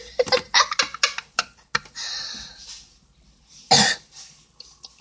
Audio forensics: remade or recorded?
recorded